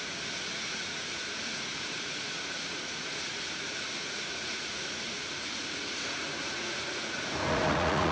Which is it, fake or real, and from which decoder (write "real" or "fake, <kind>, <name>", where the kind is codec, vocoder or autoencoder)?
fake, vocoder, Vocos